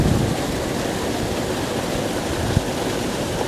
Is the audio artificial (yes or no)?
no